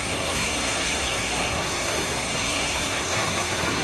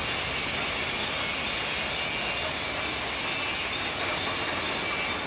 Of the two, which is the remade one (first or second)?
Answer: first